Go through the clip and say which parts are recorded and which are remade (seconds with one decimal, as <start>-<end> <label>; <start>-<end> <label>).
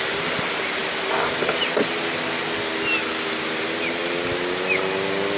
0.0-5.4 recorded